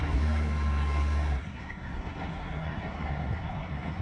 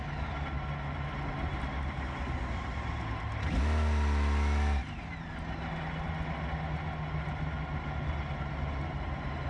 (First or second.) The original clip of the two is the second